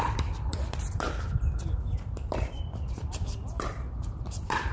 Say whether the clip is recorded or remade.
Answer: remade